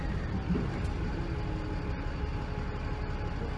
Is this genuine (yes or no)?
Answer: yes